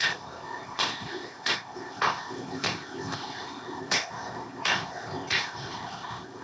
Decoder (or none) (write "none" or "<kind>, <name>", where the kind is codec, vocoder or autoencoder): codec, ZipCodec